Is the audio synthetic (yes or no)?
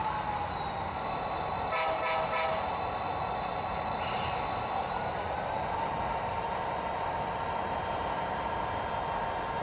no